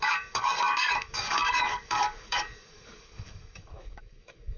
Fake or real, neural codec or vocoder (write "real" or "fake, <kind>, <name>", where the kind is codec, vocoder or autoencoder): fake, codec, DAC